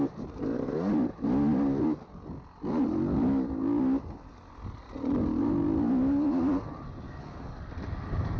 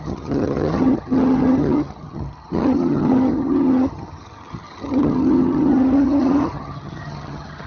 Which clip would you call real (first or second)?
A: first